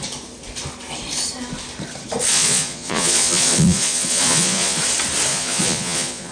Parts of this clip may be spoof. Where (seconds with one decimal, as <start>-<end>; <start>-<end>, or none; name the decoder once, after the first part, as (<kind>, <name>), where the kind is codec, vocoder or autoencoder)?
2.3-4.8 (vocoder, Vocos); 5.3-6.3